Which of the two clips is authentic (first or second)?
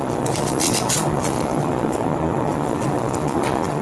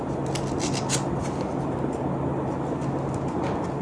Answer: second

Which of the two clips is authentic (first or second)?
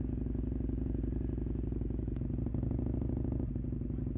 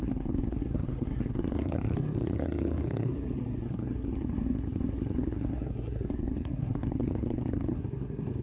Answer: first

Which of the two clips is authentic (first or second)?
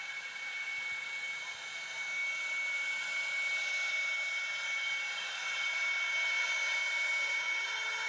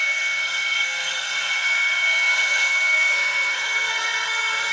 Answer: first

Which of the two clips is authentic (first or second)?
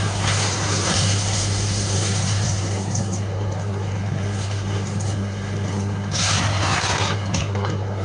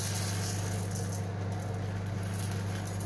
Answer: second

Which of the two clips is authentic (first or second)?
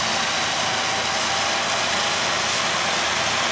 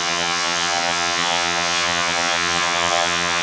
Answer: first